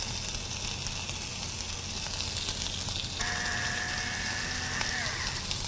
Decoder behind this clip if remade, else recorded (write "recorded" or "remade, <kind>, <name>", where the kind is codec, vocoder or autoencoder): recorded